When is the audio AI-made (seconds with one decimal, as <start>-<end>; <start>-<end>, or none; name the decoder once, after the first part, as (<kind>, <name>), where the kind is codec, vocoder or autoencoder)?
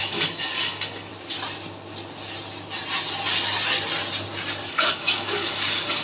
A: 0.0-1.1 (codec, DAC); 4.7-6.0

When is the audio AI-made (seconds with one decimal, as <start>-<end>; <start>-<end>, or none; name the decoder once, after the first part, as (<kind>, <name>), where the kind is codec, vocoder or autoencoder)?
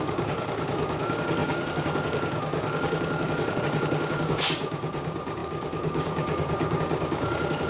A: 0.0-7.7 (codec, DAC)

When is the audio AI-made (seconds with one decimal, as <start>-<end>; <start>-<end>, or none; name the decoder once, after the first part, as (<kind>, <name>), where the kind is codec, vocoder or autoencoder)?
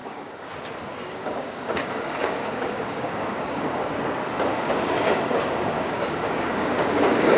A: 0.0-0.5 (codec, DAC); 0.9-3.8; 4.5-7.4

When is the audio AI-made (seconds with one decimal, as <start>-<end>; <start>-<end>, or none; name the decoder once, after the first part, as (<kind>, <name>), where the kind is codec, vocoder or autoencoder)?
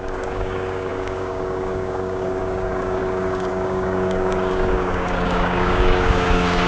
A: 0.0-6.7 (codec, DAC)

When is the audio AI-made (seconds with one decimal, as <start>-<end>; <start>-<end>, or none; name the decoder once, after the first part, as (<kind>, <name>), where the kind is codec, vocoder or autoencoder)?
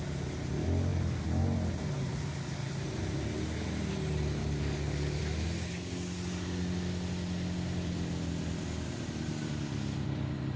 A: 4.4-5.2 (codec, DAC)